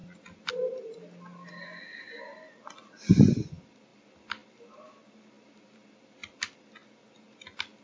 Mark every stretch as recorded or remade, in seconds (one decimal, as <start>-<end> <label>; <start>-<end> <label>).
0.0-7.8 recorded